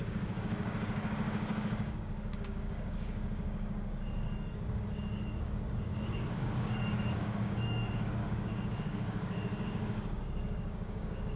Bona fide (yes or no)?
no